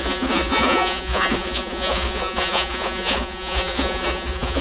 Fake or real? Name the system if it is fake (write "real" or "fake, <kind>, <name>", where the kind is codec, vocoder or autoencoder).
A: fake, vocoder, Vocos